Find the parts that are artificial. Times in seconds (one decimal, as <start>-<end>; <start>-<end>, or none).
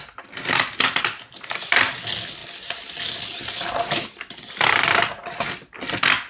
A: 2.4-4.7